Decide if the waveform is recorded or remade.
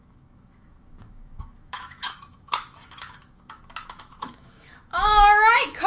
remade